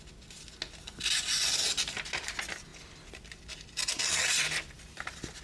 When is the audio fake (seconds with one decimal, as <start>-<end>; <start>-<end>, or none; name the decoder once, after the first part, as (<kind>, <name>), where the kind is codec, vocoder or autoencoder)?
none

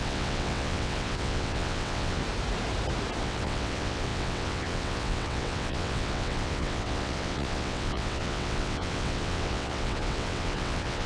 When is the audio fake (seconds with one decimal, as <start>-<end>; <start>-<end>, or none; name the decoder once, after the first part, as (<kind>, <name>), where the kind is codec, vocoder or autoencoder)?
0.0-2.2 (vocoder, WaveNeXt); 3.2-11.1

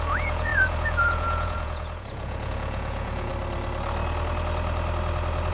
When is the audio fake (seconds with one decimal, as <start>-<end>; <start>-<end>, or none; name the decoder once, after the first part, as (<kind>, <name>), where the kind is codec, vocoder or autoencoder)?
0.0-3.3 (vocoder, Vocos)

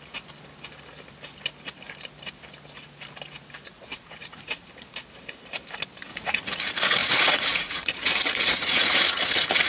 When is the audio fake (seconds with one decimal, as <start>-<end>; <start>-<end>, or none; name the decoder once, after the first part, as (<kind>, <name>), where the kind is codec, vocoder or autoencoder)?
3.9-4.7 (vocoder, Vocos); 6.1-6.6; 7.0-9.7

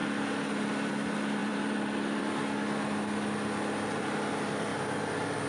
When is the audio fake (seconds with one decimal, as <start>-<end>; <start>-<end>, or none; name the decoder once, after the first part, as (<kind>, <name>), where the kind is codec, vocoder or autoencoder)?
1.4-2.2 (vocoder, BigVGAN v2); 4.7-5.5

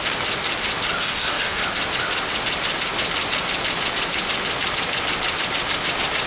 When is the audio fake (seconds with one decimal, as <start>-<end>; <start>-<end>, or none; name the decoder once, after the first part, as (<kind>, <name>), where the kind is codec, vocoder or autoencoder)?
1.0-1.6 (codec, DAC)

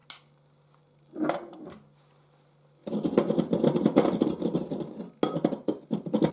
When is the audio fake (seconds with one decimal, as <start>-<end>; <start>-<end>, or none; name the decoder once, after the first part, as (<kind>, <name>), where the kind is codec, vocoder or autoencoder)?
none